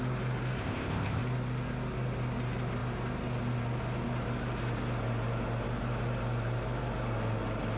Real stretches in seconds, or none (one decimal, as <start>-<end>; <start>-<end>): 0.0-0.6; 1.2-7.8

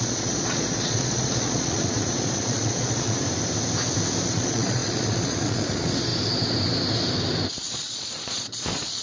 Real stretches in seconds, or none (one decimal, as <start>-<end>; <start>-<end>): 3.2-4.2; 6.1-7.7

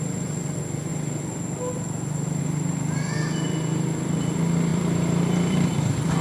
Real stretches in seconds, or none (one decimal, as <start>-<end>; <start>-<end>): 0.0-4.7

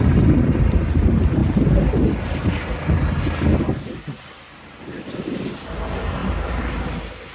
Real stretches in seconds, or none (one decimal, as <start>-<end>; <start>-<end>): 0.0-6.2; 6.8-7.3

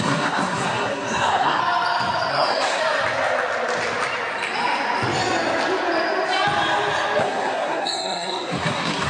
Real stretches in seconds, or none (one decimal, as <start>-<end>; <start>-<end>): 1.6-2.3; 2.8-7.2

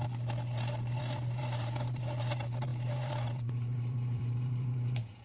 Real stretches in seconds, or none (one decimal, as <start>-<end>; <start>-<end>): 0.0-0.8

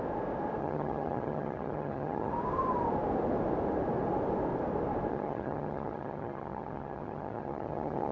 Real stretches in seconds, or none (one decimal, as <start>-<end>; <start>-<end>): 0.0-0.6; 2.3-5.1

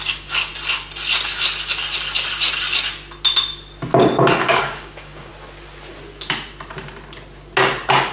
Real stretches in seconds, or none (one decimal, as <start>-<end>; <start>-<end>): 0.5-4.0; 5.3-8.1